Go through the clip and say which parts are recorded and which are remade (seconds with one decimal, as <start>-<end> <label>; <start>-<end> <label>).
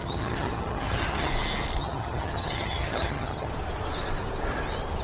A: 0.0-1.3 remade; 1.3-1.8 recorded; 1.8-3.5 remade; 3.5-5.0 recorded